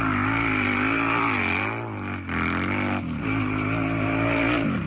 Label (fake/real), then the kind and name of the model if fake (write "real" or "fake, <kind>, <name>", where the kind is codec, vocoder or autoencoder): real